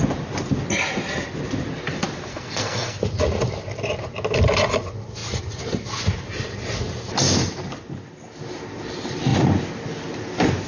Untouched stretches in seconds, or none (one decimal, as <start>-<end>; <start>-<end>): 0.0-2.3; 3.0-10.7